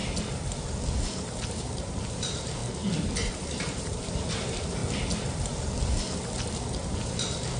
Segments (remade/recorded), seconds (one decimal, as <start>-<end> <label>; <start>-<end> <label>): 0.0-1.2 recorded; 1.2-2.6 remade; 2.6-3.3 recorded; 3.3-4.8 remade; 4.8-7.6 recorded